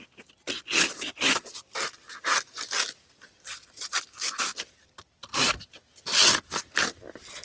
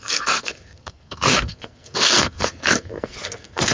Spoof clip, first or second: second